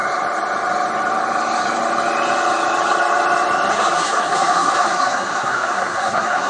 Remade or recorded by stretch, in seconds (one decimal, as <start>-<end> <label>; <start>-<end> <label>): 0.0-3.7 recorded; 3.7-6.5 remade